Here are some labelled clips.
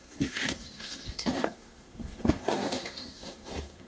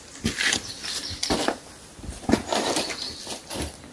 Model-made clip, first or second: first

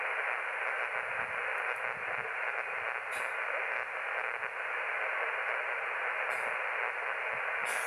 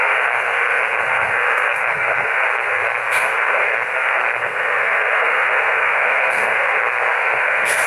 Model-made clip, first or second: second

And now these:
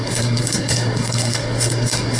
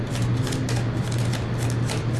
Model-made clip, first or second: first